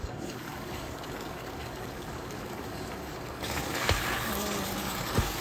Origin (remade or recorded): remade